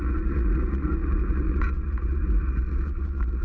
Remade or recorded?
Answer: remade